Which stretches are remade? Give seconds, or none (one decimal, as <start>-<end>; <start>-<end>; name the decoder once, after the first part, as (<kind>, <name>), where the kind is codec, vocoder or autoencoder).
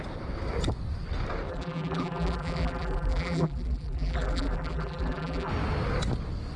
1.5-5.5 (vocoder, BigVGAN v2)